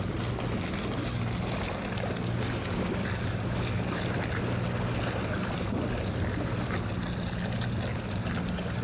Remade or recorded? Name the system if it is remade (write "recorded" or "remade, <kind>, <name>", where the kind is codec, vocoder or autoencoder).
recorded